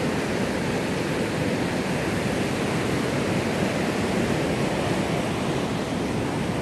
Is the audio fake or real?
real